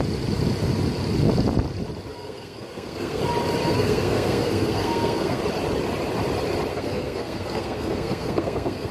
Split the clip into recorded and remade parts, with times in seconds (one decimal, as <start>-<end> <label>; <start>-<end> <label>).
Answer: 0.0-2.1 recorded; 2.1-3.2 remade; 3.2-3.6 recorded; 3.6-5.4 remade; 5.4-6.7 recorded; 6.7-8.9 remade

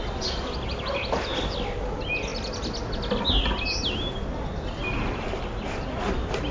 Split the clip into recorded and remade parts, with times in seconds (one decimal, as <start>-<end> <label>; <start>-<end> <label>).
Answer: 0.0-6.5 recorded

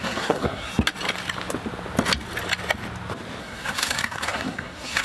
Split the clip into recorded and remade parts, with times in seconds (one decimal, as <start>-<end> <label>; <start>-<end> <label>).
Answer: 0.0-0.7 remade; 0.7-3.4 recorded; 3.4-5.0 remade

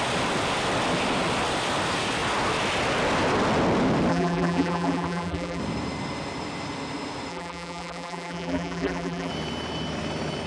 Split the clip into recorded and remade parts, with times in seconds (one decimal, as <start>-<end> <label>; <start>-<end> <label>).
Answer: 0.0-4.1 recorded; 4.1-5.6 remade; 5.6-7.3 recorded; 7.3-9.3 remade; 9.3-10.5 recorded